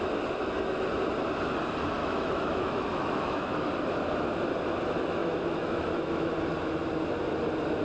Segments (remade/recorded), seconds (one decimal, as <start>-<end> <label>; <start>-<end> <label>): 0.0-2.0 recorded; 2.0-3.7 remade; 3.7-5.2 recorded; 5.2-6.3 remade; 6.3-7.8 recorded